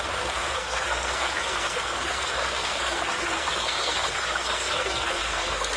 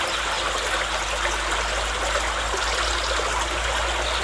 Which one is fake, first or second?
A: first